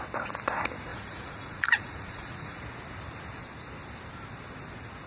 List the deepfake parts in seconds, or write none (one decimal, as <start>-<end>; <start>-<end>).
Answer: 0.9-2.6